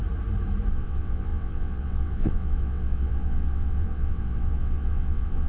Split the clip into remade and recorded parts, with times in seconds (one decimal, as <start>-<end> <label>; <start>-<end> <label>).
0.0-0.7 recorded; 0.7-5.5 remade